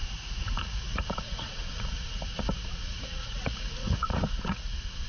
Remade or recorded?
remade